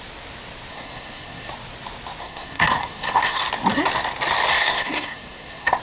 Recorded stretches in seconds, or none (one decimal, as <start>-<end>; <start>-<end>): 0.0-0.7; 1.5-2.2; 3.4-4.5